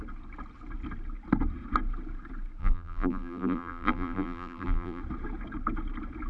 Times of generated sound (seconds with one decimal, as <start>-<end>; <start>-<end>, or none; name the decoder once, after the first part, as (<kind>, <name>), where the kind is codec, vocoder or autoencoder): 2.6-5.0 (vocoder, BigVGAN v2)